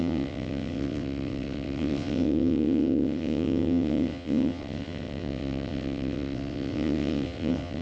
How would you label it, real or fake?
fake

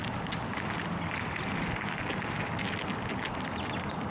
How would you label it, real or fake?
real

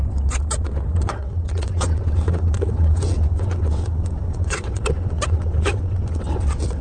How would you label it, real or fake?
fake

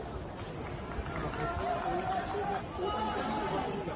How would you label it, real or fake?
real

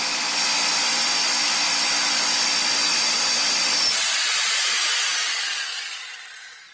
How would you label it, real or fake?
real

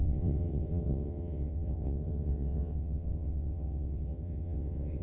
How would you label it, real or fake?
fake